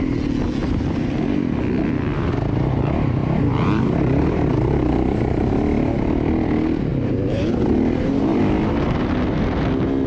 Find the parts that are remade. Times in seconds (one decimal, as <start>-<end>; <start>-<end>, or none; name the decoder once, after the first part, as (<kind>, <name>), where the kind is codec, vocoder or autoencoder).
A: 0.6-1.2 (vocoder, BigVGAN v2); 3.2-5.5; 6.9-8.4